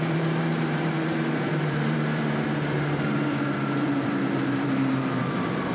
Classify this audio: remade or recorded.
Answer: remade